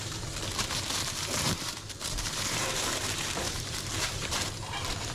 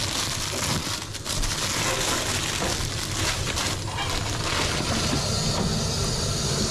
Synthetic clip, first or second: first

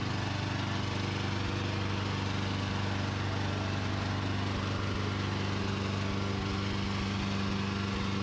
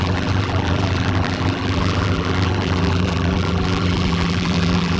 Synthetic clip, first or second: second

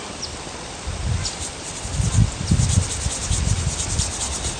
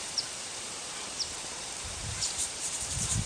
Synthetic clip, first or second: second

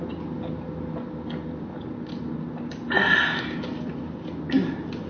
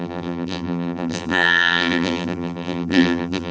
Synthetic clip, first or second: second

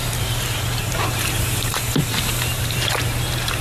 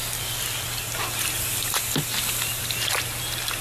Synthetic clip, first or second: first